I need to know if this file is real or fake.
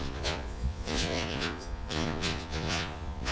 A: fake